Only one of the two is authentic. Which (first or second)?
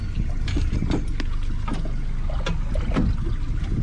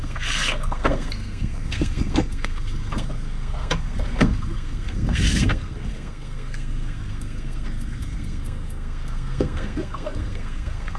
first